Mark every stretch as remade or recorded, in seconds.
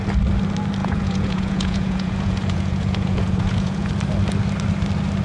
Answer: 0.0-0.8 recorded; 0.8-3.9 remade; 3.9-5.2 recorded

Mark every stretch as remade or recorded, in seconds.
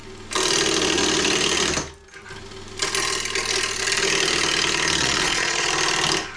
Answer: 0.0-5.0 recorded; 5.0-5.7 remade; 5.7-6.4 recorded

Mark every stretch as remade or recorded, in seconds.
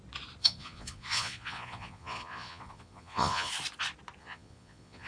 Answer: 0.0-0.4 recorded; 0.4-3.5 remade; 3.5-4.2 recorded; 4.2-5.1 remade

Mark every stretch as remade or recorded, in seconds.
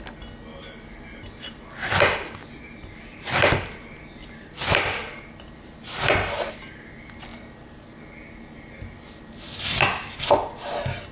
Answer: 0.0-11.1 recorded